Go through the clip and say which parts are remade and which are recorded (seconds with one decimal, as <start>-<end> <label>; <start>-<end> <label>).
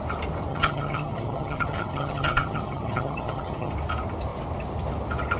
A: 0.0-0.5 recorded; 0.5-3.7 remade; 3.7-5.4 recorded